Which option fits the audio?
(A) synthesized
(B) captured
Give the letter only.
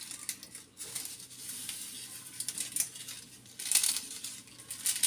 B